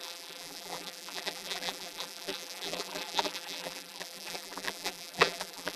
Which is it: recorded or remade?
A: remade